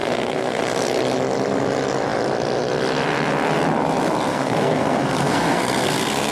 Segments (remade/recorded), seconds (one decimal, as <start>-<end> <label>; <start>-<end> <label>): 0.0-0.6 remade; 0.6-4.3 recorded; 4.3-6.3 remade